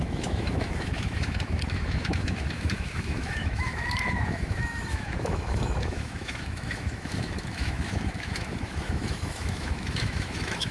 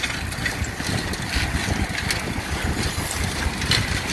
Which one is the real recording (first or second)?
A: second